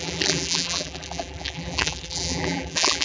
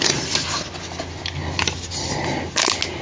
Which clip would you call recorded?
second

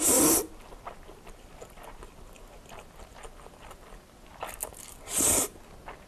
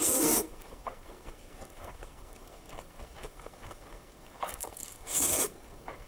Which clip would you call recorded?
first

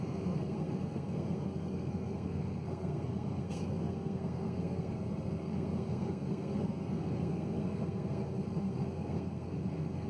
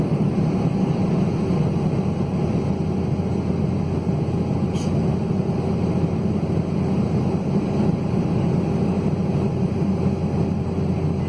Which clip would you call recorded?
second